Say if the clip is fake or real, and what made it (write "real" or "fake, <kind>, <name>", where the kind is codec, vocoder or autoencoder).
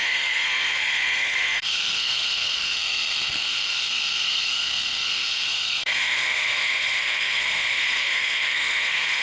fake, codec, SNAC